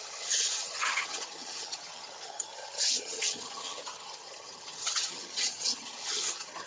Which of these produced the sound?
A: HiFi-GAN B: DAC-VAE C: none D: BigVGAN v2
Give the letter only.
A